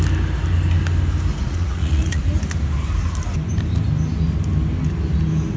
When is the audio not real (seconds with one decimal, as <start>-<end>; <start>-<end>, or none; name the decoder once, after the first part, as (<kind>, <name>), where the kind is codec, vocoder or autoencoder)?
1.3-2.2 (vocoder, Vocos)

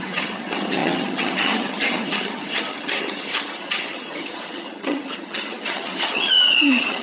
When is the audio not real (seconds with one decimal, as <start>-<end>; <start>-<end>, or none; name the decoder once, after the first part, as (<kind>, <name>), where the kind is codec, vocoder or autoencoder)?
0.0-7.0 (vocoder, HiFi-GAN)

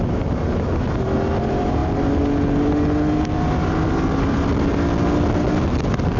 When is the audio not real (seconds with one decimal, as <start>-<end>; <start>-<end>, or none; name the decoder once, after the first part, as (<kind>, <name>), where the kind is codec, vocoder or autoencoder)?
none

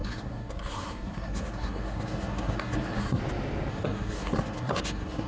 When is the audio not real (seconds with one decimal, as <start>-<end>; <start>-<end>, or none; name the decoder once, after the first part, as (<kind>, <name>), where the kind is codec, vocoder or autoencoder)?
0.0-3.2 (codec, SNAC); 3.7-5.3

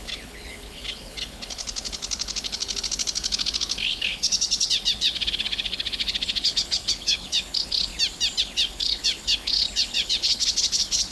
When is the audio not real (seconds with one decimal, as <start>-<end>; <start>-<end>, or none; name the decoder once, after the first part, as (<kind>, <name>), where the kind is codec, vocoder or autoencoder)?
0.0-7.9 (codec, HILCodec); 8.4-11.1

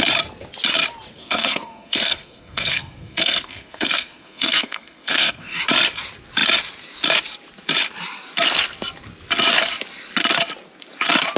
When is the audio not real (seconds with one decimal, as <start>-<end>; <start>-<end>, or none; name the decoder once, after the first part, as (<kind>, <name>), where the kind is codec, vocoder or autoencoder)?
1.1-5.6 (codec, SNAC)

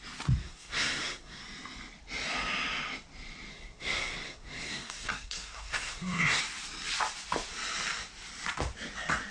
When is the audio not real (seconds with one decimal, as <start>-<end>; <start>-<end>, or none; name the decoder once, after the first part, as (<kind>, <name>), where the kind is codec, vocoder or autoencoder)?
0.4-1.4 (codec, SNAC); 3.5-6.4

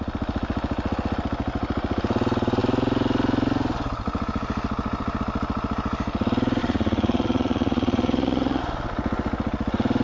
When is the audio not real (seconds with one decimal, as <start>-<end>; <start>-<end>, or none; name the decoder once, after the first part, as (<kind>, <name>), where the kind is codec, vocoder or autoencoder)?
6.6-8.6 (vocoder, Vocos)